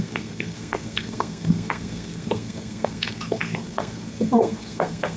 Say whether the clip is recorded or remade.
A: remade